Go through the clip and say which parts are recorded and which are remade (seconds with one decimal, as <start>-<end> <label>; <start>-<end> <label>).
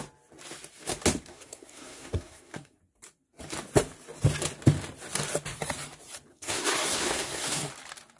0.0-1.3 recorded; 1.3-2.8 remade; 2.8-6.3 recorded; 6.3-7.7 remade; 7.7-8.2 recorded